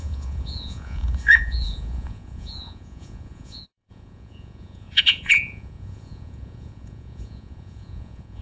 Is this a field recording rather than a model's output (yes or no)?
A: no